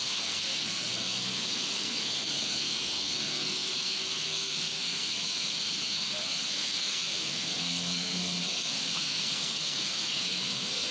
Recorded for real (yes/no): no